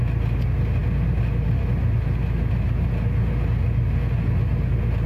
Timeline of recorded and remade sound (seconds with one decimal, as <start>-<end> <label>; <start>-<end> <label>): 0.0-5.1 recorded